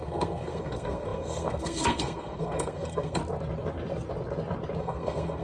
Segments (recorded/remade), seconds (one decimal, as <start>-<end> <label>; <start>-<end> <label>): 0.0-3.2 remade; 3.2-4.8 recorded; 4.8-5.4 remade